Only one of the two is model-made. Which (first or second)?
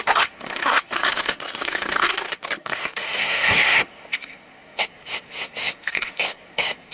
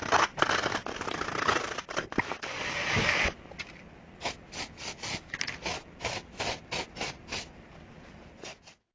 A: first